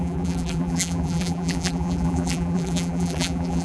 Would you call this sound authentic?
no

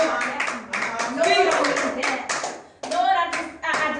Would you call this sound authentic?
yes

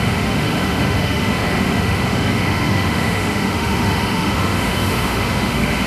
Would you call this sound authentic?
no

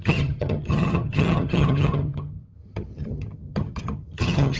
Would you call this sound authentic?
no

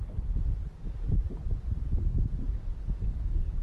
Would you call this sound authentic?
yes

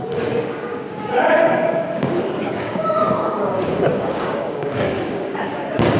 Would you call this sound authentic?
no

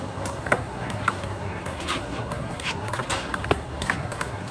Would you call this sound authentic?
no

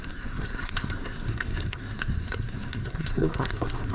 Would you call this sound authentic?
no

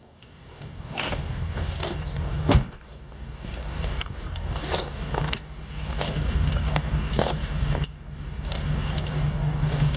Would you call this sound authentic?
no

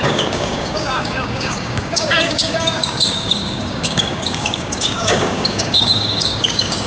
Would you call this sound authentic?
no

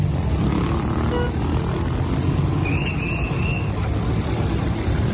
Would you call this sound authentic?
yes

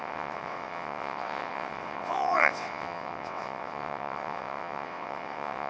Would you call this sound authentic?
no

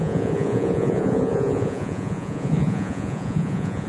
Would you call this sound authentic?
no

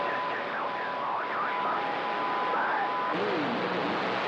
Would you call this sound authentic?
yes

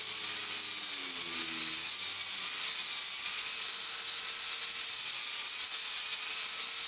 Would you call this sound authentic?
yes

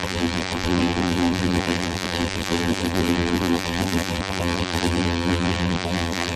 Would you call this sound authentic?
no